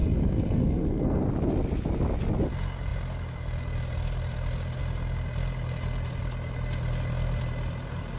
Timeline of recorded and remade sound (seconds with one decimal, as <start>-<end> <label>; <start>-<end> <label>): 0.0-1.2 remade; 1.2-8.2 recorded